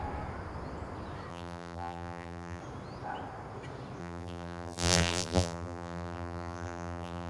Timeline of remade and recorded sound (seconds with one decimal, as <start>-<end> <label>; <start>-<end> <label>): 0.0-1.3 recorded; 1.3-2.6 remade; 2.6-4.0 recorded; 4.0-7.3 remade